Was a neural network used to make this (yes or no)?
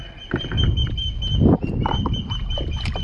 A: no